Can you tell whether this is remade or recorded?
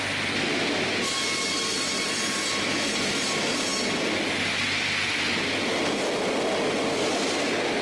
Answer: recorded